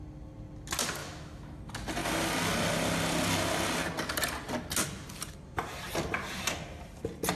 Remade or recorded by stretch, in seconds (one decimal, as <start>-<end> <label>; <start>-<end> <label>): 0.0-1.0 recorded; 1.0-1.6 remade; 1.6-7.4 recorded